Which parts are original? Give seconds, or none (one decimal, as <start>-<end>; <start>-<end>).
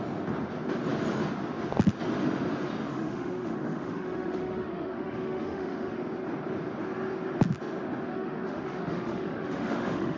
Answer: 0.0-2.9; 6.0-8.1